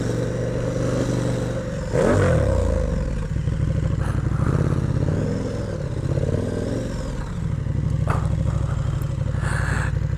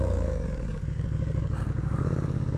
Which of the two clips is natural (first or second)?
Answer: first